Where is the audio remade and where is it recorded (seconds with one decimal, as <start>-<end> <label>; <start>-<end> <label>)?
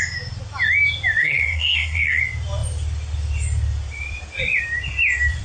0.0-1.2 recorded; 1.2-2.2 remade; 2.2-5.4 recorded